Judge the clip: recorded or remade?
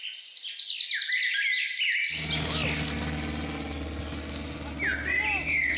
recorded